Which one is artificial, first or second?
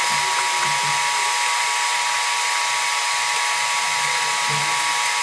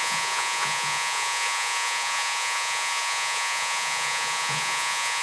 second